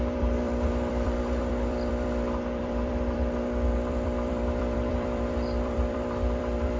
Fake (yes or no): yes